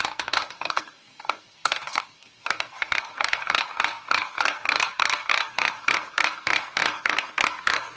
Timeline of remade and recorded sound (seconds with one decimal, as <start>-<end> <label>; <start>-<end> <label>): 0.0-8.0 remade